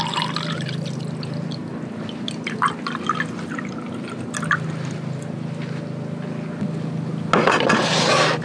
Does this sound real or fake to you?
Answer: real